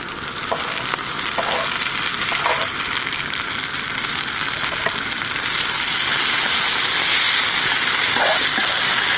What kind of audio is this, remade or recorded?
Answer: recorded